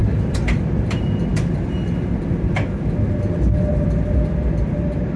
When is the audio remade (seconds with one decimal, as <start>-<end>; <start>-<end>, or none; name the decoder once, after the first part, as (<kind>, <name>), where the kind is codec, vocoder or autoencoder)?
none